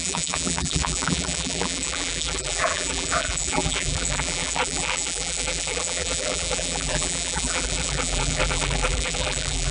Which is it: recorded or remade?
remade